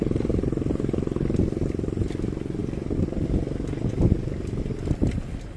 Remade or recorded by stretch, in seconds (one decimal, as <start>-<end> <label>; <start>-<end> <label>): 0.0-5.6 recorded